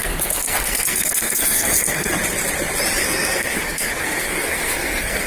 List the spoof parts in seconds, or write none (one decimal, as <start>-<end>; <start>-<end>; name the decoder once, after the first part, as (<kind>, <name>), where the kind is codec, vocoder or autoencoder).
0.0-2.1 (codec, SNAC); 3.0-5.3

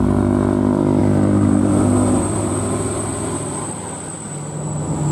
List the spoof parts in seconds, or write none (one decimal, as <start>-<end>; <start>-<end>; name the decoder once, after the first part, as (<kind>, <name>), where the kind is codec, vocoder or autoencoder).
1.0-2.5 (vocoder, BigVGAN v2)

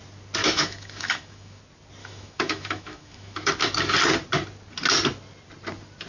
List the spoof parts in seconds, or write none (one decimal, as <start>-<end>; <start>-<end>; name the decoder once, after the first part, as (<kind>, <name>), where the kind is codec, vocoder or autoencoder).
0.4-1.6 (autoencoder, DAC-VAE); 2.0-3.5

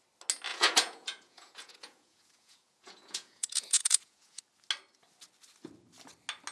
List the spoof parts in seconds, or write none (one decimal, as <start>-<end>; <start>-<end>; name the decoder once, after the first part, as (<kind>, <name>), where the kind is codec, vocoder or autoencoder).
0.5-4.4 (vocoder, Vocos)

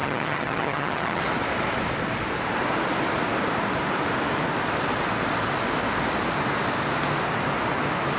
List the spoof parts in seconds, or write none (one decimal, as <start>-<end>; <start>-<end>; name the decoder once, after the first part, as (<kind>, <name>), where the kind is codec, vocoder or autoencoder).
0.0-1.2 (vocoder, HiFi-GAN)

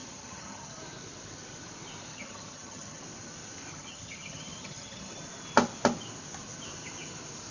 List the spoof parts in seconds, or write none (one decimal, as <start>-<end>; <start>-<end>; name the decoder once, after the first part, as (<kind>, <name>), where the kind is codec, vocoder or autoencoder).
0.0-0.8 (vocoder, HiFi-GAN); 2.1-3.0; 3.7-5.1